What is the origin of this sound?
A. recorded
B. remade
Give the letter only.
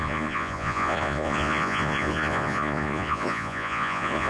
B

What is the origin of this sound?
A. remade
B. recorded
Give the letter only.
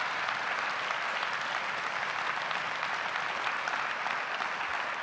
B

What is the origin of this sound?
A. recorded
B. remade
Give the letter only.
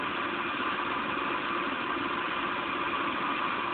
A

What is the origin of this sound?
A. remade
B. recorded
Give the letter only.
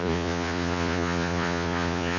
A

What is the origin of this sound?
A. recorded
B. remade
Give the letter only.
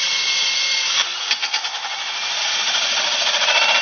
A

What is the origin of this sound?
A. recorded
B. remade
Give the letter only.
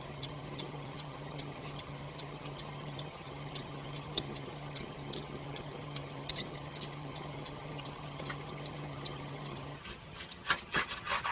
B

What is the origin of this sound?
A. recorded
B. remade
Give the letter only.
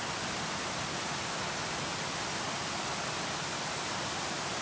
A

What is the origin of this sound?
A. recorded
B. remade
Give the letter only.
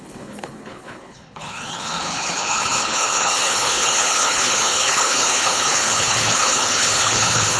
B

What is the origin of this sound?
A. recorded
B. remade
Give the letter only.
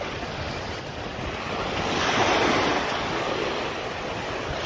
A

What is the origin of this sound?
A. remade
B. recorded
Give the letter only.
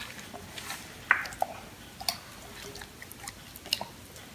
B